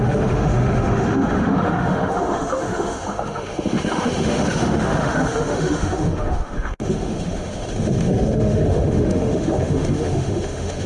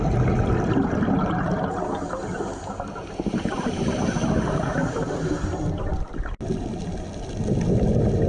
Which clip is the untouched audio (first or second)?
second